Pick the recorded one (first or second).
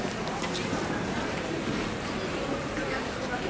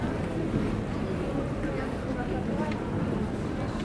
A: second